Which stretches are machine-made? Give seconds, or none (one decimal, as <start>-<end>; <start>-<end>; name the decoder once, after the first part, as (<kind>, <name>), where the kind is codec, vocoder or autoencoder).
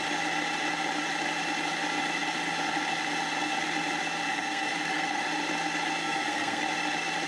4.3-5.2 (codec, SNAC); 6.0-6.6